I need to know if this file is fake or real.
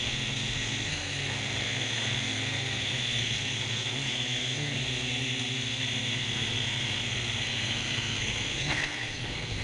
fake